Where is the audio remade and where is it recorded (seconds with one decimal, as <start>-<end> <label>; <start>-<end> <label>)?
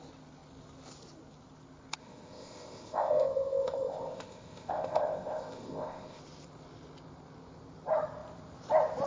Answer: 0.0-2.0 recorded; 2.0-6.2 remade; 6.2-9.1 recorded